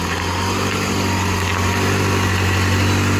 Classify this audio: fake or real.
real